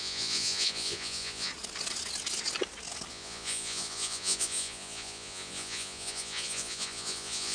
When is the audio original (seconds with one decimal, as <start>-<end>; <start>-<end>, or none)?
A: 1.5-3.1

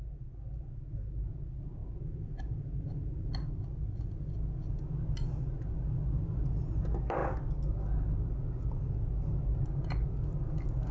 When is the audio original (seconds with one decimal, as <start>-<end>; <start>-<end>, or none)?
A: 0.0-10.9